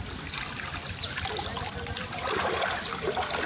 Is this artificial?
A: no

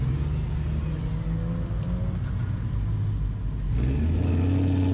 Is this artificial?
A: no